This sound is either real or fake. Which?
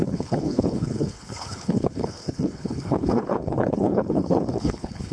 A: fake